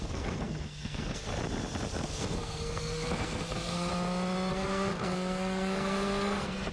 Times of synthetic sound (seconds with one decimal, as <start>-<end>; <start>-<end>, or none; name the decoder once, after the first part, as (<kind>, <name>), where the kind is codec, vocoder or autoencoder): 0.0-1.3 (codec, SNAC); 1.9-3.9; 4.5-6.7